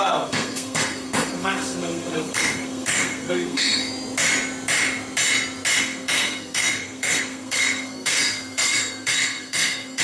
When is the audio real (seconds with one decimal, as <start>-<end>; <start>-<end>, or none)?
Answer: 3.8-5.8